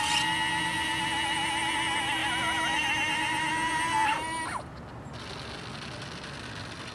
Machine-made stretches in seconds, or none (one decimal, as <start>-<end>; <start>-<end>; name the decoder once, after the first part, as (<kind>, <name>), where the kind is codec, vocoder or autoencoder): none